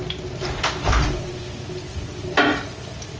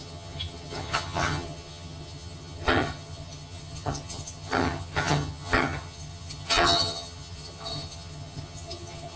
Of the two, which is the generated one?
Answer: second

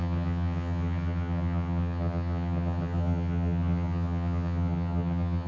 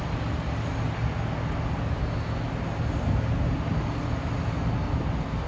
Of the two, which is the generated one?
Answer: first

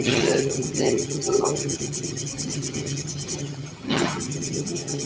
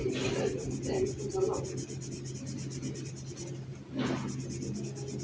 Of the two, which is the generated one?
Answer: first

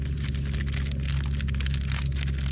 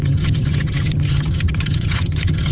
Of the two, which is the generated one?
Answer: second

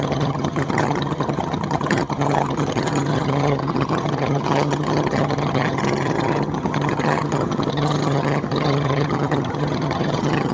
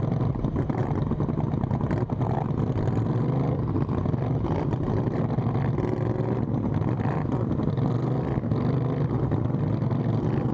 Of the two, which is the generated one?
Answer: first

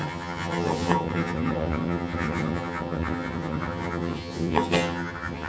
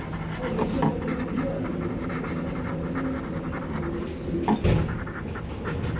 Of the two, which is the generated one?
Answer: first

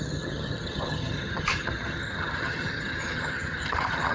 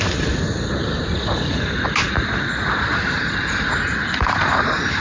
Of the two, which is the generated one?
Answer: first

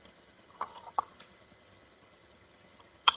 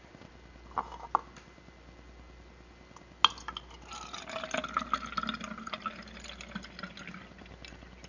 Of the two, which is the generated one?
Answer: first